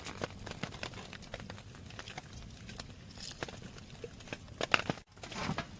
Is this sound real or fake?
real